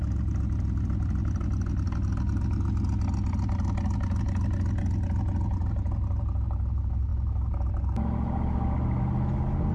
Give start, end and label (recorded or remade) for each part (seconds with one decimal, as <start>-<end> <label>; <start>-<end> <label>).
0.0-9.7 recorded